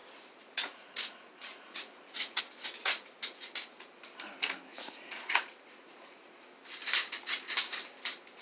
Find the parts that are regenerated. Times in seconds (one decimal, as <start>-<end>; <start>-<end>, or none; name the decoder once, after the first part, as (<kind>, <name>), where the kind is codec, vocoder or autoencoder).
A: 0.0-2.4 (vocoder, Vocos); 2.8-3.5; 4.7-6.4